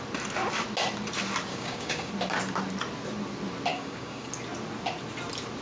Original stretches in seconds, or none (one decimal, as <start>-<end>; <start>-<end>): 0.0-1.5; 2.1-3.7; 4.3-5.6